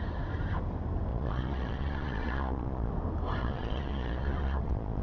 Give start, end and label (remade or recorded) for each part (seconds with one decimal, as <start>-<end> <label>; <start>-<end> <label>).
0.0-1.1 recorded; 1.1-2.9 remade; 2.9-3.4 recorded; 3.4-5.0 remade